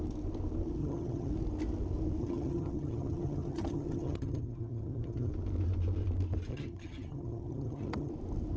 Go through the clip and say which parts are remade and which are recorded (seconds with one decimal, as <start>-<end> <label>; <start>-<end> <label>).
0.0-0.8 recorded; 0.8-1.3 remade; 1.3-2.2 recorded; 2.2-5.3 remade; 5.3-6.5 recorded; 6.5-8.1 remade; 8.1-8.6 recorded